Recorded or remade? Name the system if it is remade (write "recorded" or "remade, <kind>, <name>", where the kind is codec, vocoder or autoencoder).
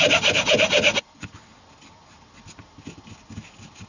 recorded